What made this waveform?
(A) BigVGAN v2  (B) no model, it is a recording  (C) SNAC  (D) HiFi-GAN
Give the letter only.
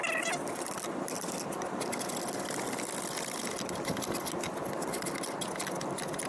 B